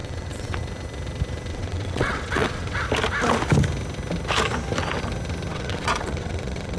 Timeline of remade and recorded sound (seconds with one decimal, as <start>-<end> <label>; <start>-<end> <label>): 0.0-0.6 remade; 0.6-1.5 recorded; 1.5-2.8 remade; 2.8-5.5 recorded; 5.5-6.8 remade